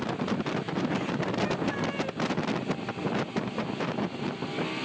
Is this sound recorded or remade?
recorded